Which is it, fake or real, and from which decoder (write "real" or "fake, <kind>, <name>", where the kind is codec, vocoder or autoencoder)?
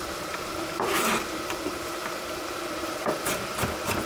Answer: fake, vocoder, BigVGAN v2